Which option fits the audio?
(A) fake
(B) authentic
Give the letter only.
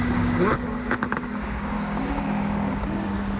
A